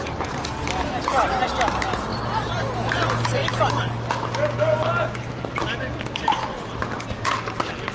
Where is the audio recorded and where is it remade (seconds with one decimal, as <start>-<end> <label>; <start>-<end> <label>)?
0.0-7.9 recorded